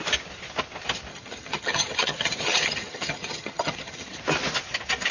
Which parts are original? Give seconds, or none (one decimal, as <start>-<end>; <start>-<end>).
0.0-1.1; 4.2-5.1